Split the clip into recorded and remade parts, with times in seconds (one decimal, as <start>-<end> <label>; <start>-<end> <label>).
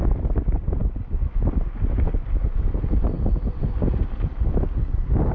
0.0-5.3 recorded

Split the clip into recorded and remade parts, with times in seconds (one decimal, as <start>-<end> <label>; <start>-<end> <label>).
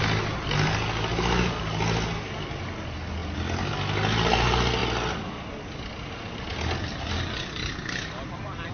0.0-8.7 recorded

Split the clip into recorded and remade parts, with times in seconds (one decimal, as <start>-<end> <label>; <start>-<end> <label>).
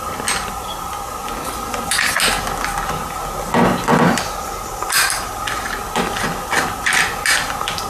0.0-7.9 recorded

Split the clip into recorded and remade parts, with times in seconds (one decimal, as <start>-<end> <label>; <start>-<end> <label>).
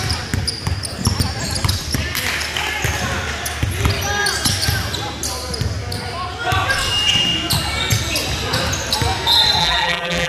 0.0-9.6 recorded; 9.6-10.3 remade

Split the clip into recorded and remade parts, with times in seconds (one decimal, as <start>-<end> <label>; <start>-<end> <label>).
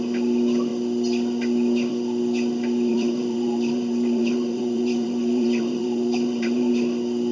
0.0-2.9 recorded; 2.9-6.7 remade; 6.7-7.3 recorded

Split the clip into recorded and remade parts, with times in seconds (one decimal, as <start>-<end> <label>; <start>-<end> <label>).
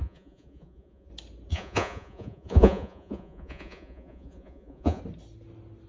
0.0-1.1 remade; 1.1-1.5 recorded; 1.5-5.0 remade; 5.0-5.9 recorded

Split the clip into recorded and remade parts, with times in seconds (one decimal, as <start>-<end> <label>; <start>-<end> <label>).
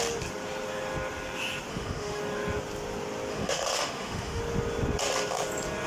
0.0-1.7 recorded; 1.7-2.2 remade; 2.2-3.3 recorded; 3.3-4.4 remade; 4.4-5.9 recorded